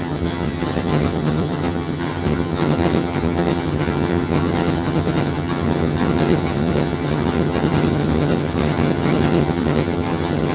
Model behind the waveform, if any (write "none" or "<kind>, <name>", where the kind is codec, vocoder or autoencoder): vocoder, HiFi-GAN